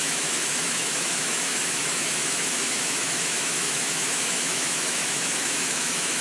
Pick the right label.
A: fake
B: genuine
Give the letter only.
A